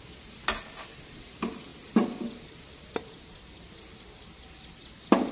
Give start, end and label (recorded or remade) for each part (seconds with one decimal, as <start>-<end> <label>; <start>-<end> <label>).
0.0-5.3 recorded